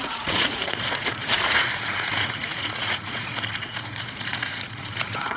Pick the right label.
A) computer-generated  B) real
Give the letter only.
A